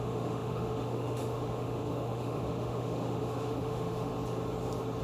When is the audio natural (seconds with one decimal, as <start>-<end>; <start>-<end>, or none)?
4.1-5.0